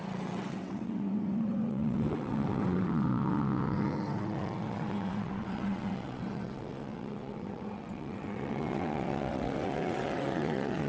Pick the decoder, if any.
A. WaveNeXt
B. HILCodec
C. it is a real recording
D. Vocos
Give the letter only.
A